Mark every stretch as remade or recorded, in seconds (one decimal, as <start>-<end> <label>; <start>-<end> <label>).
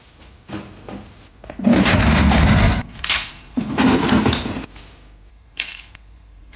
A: 0.0-2.0 recorded; 2.0-4.2 remade; 4.2-5.3 recorded; 5.3-6.6 remade